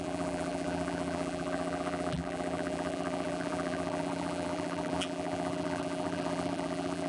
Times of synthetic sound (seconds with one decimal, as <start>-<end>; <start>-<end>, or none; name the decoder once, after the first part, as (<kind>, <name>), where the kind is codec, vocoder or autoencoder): 0.0-7.1 (vocoder, BigVGAN v2)